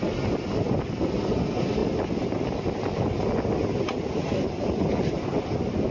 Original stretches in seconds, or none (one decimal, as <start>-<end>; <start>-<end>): 0.0-5.9